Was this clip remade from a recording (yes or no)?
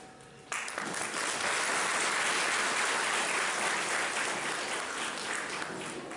no